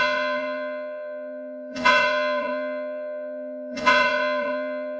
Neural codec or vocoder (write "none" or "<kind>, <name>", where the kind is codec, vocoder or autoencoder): vocoder, Vocos